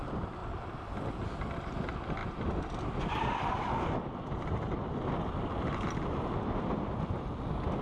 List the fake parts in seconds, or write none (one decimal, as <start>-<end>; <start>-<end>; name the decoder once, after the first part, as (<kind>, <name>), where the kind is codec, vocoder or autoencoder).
none